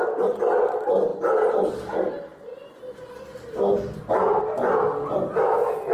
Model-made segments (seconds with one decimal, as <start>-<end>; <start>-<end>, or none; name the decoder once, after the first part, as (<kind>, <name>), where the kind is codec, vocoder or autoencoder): none